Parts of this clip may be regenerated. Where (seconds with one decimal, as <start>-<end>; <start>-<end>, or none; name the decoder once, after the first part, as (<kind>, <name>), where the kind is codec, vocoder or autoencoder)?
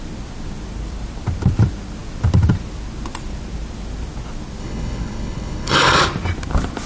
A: 4.6-5.7 (codec, HILCodec)